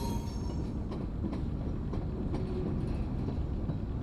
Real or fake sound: real